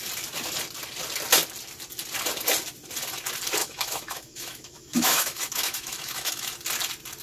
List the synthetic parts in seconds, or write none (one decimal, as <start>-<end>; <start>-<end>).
3.6-6.5